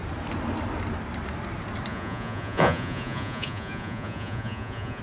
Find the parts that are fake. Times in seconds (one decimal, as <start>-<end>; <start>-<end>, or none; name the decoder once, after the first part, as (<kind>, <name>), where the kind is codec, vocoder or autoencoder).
1.9-5.0 (vocoder, Vocos)